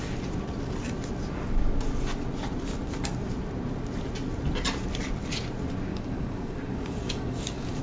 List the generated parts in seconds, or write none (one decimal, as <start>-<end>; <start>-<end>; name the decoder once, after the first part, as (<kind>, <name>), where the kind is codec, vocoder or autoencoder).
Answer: 5.9-7.8 (codec, DAC)